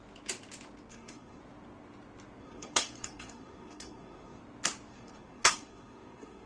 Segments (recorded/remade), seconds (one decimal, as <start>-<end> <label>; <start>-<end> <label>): 0.0-0.9 recorded; 0.9-1.4 remade; 1.4-2.4 recorded; 2.4-4.4 remade; 4.4-4.9 recorded; 4.9-6.5 remade